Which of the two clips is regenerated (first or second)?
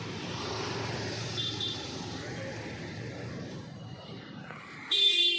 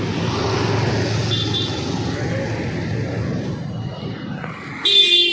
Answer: first